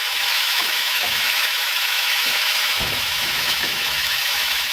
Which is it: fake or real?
fake